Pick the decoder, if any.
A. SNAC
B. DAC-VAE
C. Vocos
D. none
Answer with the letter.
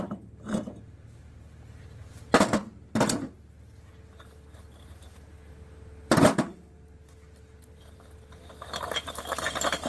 D